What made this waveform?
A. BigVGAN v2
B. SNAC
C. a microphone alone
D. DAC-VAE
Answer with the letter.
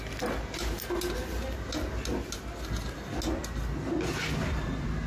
C